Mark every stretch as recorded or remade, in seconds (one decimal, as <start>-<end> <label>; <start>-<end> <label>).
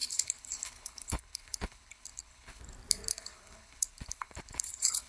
0.0-2.6 remade; 2.6-3.1 recorded; 3.1-5.1 remade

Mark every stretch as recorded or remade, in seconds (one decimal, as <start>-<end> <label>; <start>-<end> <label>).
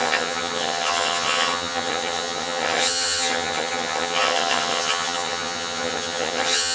0.0-6.7 remade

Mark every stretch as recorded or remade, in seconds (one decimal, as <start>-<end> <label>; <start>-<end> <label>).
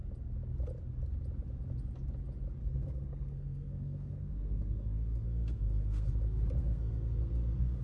0.0-2.6 recorded; 2.6-6.1 remade; 6.1-6.6 recorded; 6.6-7.8 remade